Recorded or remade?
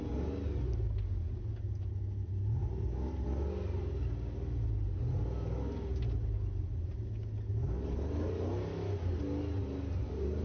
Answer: recorded